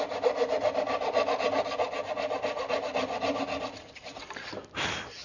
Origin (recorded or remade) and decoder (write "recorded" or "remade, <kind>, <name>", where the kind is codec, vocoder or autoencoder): recorded